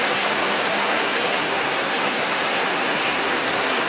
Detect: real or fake fake